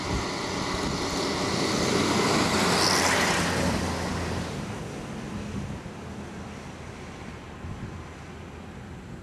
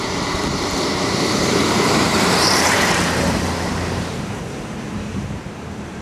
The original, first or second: first